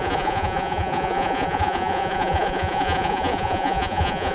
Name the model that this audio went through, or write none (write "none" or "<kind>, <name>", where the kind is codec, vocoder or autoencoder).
vocoder, Vocos